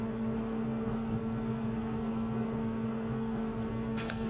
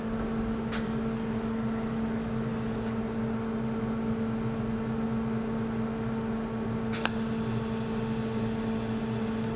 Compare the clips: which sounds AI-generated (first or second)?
first